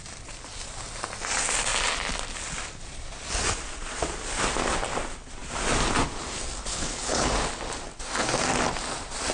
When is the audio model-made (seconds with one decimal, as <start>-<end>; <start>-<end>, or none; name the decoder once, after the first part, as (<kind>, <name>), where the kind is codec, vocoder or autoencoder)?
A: 6.7-7.3 (codec, HILCodec)